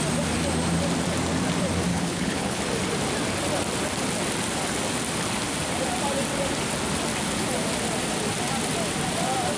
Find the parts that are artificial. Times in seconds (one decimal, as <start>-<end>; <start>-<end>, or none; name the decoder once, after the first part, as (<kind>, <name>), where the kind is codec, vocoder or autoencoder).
1.9-2.6 (codec, HILCodec)